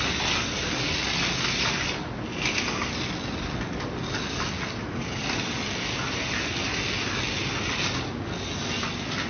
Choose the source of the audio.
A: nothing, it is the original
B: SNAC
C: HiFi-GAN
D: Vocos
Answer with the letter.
A